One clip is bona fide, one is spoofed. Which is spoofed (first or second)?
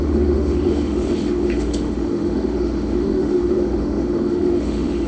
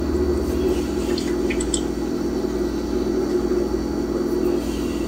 first